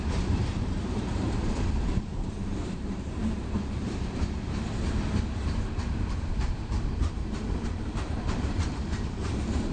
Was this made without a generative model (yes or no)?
no